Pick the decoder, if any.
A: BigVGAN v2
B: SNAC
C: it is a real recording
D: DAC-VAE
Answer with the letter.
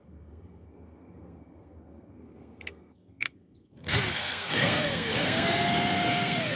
B